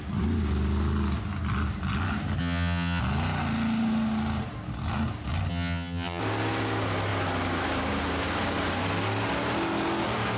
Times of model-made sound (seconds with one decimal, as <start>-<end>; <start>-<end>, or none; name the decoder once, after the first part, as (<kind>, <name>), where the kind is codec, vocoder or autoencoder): 2.4-3.0 (vocoder, HiFi-GAN); 5.5-6.2